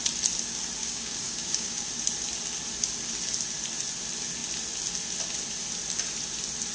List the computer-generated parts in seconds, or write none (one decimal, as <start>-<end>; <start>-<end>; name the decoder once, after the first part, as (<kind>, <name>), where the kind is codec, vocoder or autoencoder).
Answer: 0.8-1.9 (codec, DAC)